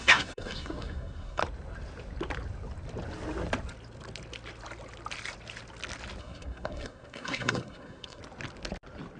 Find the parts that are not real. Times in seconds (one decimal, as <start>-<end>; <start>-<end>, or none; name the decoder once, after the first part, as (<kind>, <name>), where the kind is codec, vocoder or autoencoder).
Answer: 0.0-1.4 (codec, SNAC); 6.2-8.2